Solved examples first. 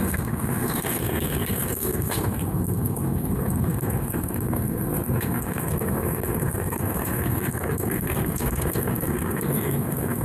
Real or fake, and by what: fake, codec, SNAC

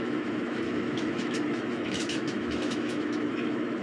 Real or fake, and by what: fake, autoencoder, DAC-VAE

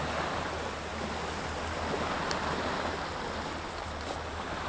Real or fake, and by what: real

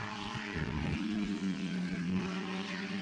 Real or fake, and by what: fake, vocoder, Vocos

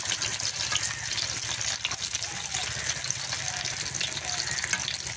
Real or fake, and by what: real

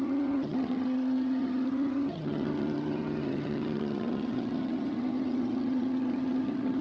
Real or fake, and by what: fake, vocoder, HiFi-GAN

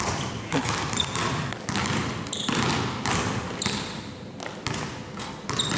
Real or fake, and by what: real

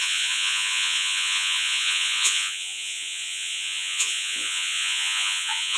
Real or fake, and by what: fake, vocoder, Vocos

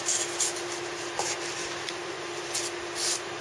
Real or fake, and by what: real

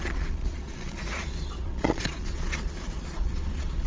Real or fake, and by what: fake, vocoder, Vocos